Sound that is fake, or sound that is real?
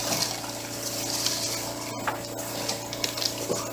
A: real